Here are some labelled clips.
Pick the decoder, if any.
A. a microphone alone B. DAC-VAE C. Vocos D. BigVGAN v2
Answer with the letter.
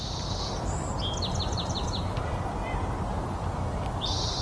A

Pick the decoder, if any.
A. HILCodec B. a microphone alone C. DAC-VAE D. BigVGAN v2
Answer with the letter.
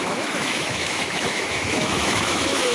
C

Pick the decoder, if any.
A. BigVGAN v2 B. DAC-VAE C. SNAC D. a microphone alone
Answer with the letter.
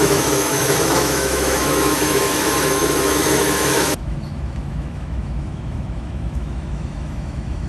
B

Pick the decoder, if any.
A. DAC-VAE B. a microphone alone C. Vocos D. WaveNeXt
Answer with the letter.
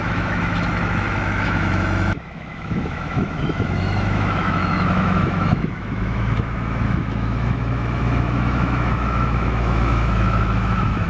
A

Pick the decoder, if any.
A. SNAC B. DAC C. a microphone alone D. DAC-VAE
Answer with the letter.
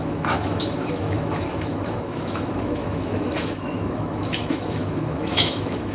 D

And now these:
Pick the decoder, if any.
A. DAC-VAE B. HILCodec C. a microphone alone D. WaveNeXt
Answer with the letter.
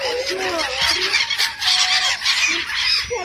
C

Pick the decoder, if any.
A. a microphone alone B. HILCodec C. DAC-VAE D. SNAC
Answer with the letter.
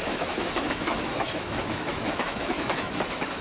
C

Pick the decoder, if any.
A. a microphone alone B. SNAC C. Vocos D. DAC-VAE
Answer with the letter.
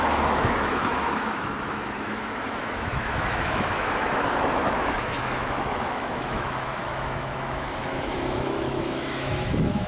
D